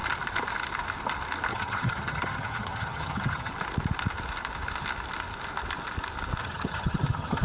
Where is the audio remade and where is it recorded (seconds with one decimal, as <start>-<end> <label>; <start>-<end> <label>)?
0.0-1.5 recorded; 1.5-3.5 remade; 3.5-6.4 recorded; 6.4-7.4 remade